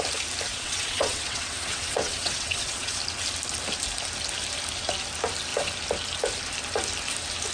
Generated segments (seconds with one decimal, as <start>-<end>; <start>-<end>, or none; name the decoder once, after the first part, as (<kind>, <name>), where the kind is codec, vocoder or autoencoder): 0.5-3.0 (vocoder, WaveNeXt)